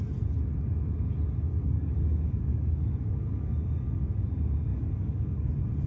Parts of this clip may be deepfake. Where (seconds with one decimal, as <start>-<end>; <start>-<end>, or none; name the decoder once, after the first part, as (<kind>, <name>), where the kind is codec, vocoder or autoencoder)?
1.5-4.0 (codec, DAC); 4.7-5.5